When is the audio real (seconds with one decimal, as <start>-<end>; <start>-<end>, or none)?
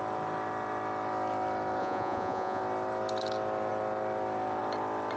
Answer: 0.0-1.8; 2.6-5.2